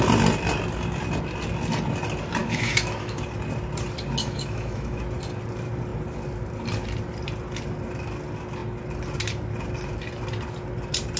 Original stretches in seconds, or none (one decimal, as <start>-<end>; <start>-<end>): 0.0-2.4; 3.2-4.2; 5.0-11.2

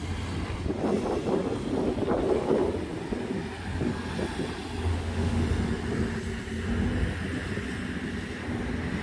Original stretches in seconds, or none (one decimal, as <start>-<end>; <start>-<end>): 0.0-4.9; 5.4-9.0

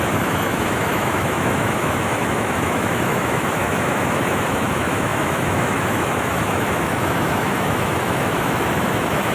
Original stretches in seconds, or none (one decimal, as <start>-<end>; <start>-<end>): none